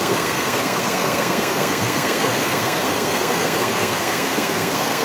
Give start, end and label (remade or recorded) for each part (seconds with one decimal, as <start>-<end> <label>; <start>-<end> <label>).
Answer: 0.0-5.0 remade